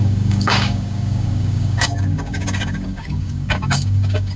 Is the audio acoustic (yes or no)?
no